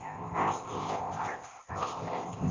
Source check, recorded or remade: remade